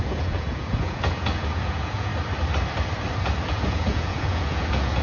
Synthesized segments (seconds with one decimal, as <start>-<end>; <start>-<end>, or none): 0.0-2.1; 3.5-5.0